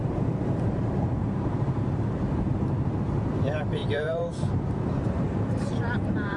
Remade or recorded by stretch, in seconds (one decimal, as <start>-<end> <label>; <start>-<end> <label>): 0.0-6.4 remade